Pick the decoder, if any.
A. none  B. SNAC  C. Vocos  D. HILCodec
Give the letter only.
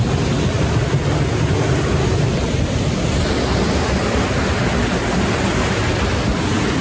A